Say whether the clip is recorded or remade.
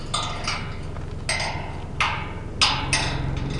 recorded